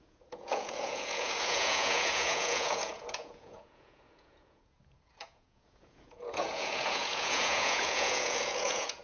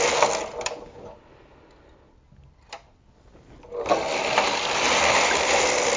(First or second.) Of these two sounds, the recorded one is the second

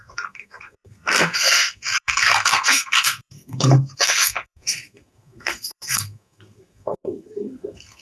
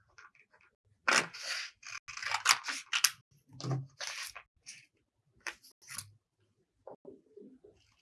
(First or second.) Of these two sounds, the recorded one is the second